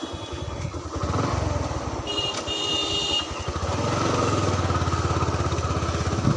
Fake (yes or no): no